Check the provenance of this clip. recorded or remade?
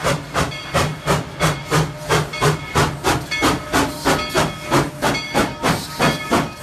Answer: recorded